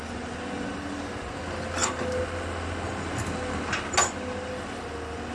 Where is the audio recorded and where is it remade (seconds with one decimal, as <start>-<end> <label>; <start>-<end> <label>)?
0.0-5.3 recorded